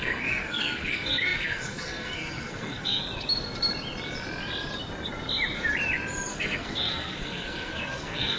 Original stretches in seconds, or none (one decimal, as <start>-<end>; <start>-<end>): 3.0-6.3